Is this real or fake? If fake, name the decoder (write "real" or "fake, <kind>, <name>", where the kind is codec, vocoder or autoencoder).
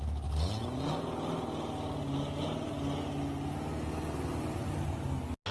real